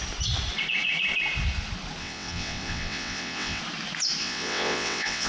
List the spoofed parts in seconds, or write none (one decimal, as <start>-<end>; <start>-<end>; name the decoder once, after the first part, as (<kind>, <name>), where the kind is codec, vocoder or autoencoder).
2.0-3.6 (vocoder, WaveNeXt); 4.2-5.3